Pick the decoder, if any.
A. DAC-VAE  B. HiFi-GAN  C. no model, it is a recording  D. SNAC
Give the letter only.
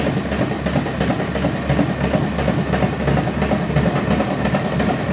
C